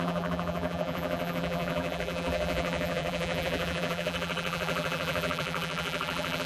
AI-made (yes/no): yes